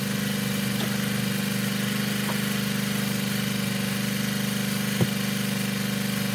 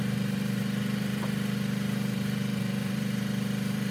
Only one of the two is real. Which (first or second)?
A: first